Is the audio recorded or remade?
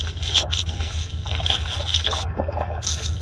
remade